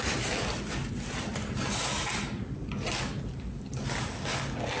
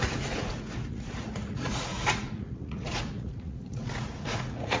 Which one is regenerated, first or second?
second